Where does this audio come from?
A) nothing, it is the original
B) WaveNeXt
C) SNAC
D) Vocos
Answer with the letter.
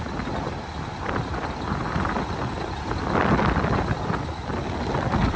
A